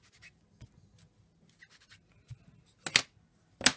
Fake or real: real